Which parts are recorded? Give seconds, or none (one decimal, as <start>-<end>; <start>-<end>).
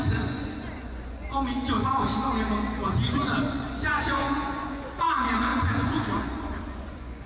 2.1-2.8